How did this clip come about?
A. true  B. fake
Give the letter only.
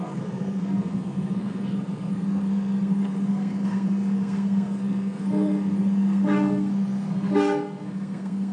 B